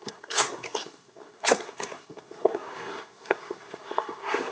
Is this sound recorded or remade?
remade